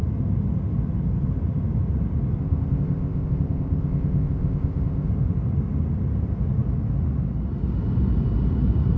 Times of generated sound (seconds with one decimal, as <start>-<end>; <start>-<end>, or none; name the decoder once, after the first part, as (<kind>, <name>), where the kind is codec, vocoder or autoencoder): 2.4-5.1 (codec, ZipCodec)